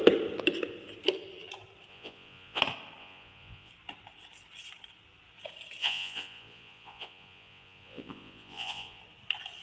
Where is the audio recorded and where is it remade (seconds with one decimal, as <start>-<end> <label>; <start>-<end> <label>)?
0.0-1.9 recorded; 1.9-2.6 remade; 2.6-3.0 recorded; 3.0-3.7 remade; 3.7-5.8 recorded; 5.8-9.0 remade; 9.0-9.6 recorded